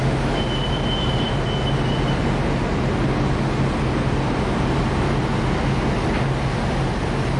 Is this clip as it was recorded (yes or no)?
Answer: yes